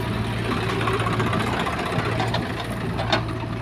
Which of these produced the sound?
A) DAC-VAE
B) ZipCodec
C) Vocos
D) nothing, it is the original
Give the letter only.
D